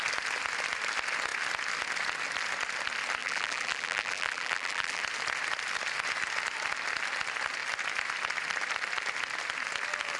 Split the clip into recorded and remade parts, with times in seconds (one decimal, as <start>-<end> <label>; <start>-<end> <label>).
0.0-3.2 recorded; 3.2-5.0 remade; 5.0-10.2 recorded

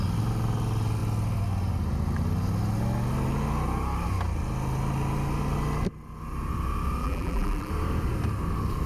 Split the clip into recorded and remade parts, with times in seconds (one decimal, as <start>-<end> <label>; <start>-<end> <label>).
0.0-7.0 recorded; 7.0-7.7 remade; 7.7-8.9 recorded

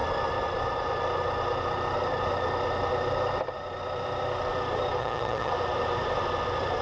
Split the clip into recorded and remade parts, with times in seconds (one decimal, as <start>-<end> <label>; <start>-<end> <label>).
0.0-5.0 recorded; 5.0-5.5 remade; 5.5-6.8 recorded

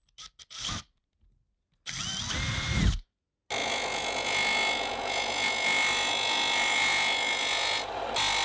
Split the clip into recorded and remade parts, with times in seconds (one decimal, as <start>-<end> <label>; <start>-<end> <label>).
0.0-3.6 recorded; 3.6-7.9 remade; 7.9-8.4 recorded

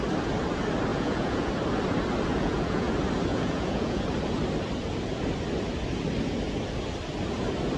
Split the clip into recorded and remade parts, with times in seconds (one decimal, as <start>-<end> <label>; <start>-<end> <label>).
0.0-0.9 recorded; 0.9-1.5 remade; 1.5-2.3 recorded; 2.3-2.9 remade; 2.9-3.3 recorded; 3.3-4.0 remade; 4.0-7.8 recorded

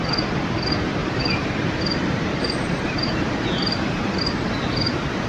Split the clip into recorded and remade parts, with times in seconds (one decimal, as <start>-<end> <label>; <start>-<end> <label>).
0.0-1.0 recorded; 1.0-4.2 remade; 4.2-5.3 recorded

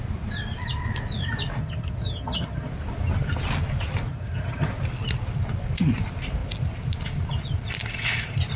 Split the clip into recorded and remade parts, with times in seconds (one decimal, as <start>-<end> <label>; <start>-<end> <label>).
0.0-1.6 recorded; 1.6-2.7 remade; 2.7-4.1 recorded; 4.1-4.7 remade; 4.7-8.6 recorded